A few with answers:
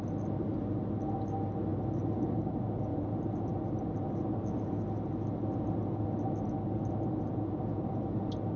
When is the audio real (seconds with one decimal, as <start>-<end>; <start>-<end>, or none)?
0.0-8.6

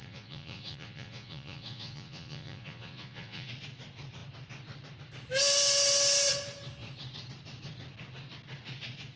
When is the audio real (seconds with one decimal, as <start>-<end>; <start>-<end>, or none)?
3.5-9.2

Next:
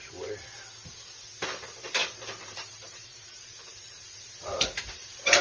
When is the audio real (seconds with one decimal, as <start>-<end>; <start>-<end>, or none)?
0.0-2.0

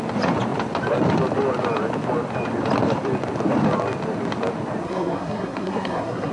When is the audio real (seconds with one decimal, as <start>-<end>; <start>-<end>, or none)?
0.0-4.8

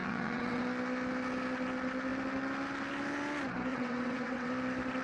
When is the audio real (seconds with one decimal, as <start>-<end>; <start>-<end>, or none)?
0.6-3.7; 4.5-5.0